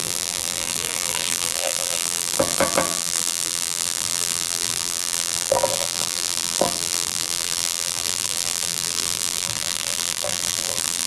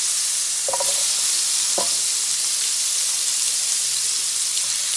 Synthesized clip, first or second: first